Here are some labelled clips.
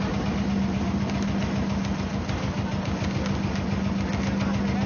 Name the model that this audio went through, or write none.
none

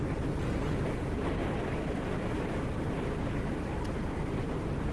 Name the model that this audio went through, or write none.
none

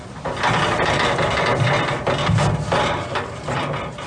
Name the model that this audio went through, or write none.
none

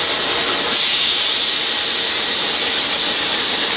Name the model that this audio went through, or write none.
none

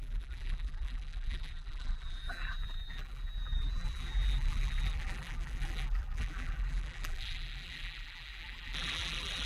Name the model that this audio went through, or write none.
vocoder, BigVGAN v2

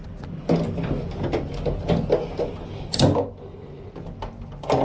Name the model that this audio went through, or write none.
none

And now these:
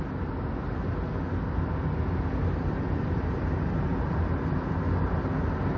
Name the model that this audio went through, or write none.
none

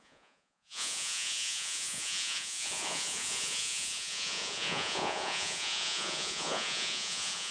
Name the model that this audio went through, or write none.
vocoder, Vocos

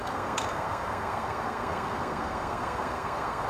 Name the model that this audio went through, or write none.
codec, SNAC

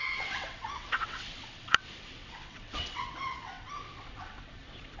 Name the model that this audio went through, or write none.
vocoder, WaveNeXt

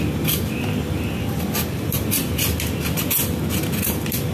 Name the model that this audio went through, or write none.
none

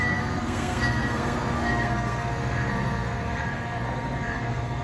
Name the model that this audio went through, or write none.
codec, SNAC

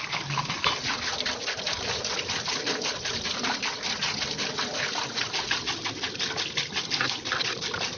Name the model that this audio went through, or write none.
none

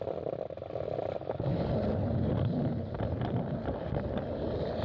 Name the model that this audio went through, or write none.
none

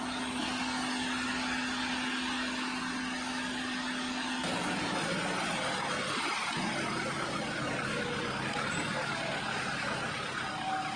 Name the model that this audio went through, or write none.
none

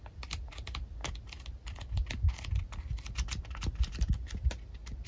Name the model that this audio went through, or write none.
none